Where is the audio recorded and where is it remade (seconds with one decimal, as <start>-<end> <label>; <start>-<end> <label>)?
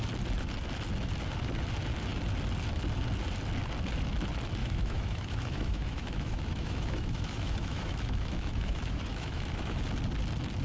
0.0-4.6 recorded; 4.6-9.8 remade; 9.8-10.6 recorded